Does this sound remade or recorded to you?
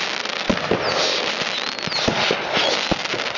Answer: recorded